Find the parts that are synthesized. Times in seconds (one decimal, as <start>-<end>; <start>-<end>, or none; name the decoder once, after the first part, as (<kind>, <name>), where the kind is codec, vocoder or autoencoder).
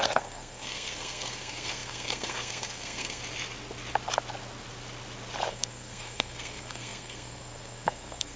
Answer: 0.0-3.2 (codec, SNAC); 5.5-8.4